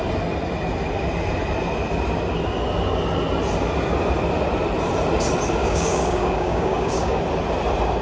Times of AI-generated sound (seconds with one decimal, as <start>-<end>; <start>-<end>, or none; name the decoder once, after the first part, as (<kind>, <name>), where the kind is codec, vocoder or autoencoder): 5.6-7.2 (codec, DAC)